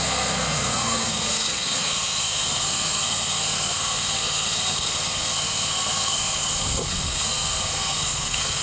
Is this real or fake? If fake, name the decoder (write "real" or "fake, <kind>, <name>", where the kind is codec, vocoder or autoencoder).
fake, codec, SNAC